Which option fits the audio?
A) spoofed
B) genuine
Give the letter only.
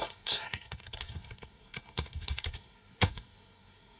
A